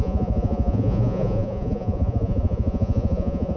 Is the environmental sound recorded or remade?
remade